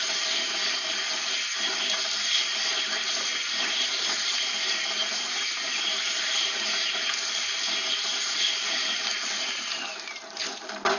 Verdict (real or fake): fake